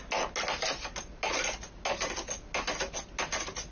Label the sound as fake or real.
real